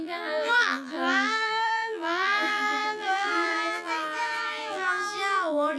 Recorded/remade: remade